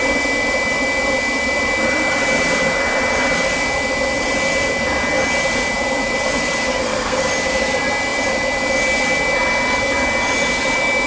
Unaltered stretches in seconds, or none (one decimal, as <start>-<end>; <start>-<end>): 0.0-6.7; 7.3-11.1